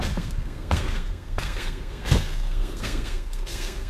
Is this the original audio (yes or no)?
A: no